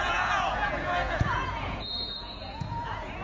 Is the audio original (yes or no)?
no